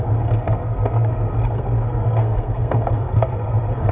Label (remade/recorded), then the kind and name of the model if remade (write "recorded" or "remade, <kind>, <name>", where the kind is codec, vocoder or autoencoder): remade, codec, SNAC